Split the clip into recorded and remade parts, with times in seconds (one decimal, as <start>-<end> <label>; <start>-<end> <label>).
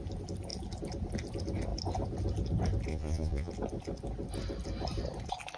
0.0-2.9 recorded; 2.9-3.5 remade; 3.5-5.6 recorded